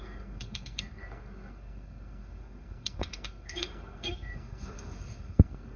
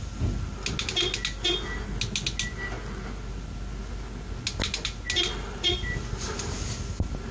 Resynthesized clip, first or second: first